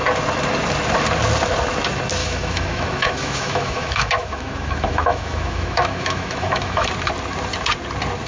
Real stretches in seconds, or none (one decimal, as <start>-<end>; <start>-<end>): 0.0-2.2; 6.9-8.3

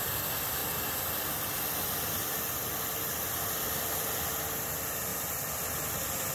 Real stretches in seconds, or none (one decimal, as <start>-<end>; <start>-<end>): 0.0-5.1; 5.6-6.3